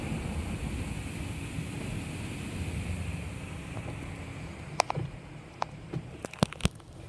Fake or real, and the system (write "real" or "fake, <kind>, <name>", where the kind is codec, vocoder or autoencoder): real